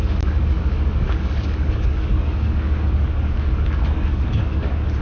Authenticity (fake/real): fake